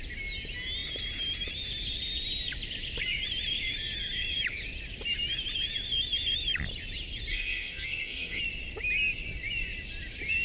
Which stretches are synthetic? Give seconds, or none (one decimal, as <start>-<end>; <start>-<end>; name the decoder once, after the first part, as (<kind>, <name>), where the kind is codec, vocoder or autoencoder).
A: 7.3-8.4 (codec, SNAC)